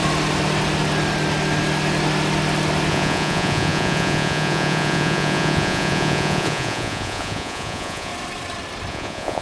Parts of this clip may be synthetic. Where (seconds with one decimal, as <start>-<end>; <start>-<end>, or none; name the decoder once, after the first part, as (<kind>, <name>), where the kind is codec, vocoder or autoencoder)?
2.9-8.1 (vocoder, Vocos); 8.9-9.4